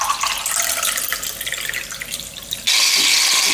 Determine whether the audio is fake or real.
real